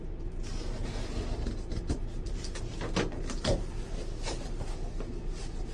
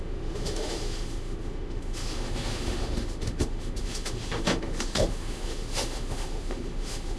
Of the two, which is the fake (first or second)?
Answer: second